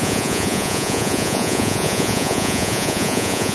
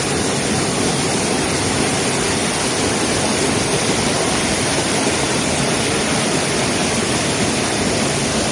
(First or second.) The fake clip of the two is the first